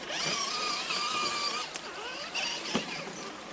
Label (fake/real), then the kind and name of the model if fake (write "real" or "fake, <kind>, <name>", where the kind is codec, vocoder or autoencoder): real